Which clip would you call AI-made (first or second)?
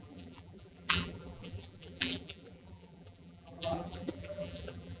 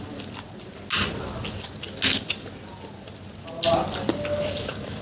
first